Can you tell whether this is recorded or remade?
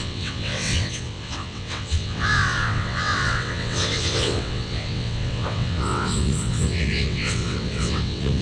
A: remade